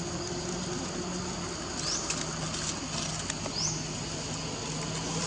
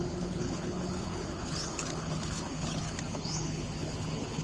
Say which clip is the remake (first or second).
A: second